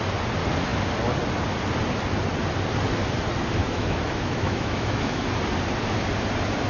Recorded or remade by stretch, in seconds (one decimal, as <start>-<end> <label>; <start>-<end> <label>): 0.0-3.6 recorded; 3.6-5.2 remade; 5.2-6.7 recorded